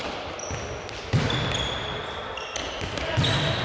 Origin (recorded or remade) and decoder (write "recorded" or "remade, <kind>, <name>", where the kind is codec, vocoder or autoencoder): recorded